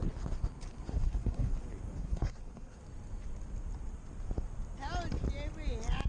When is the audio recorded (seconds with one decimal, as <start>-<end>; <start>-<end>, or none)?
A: 0.0-0.9; 1.5-2.0; 2.8-6.1